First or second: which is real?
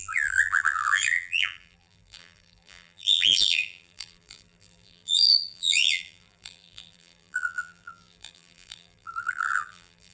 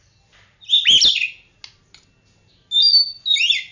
second